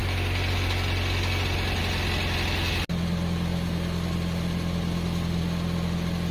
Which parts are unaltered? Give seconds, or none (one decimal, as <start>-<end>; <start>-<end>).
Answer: 0.0-6.3